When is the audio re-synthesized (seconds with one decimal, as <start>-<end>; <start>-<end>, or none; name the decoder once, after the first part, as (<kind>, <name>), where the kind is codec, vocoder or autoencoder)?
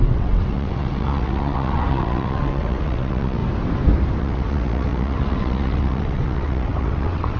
0.0-3.4 (vocoder, WaveNeXt); 4.2-7.4